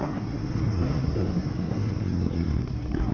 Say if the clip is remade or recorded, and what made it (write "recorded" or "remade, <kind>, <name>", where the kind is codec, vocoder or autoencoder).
remade, codec, SNAC